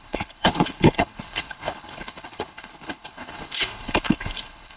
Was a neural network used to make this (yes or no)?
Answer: yes